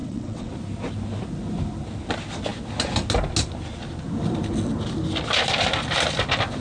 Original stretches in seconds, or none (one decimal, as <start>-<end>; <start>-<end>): 0.5-6.6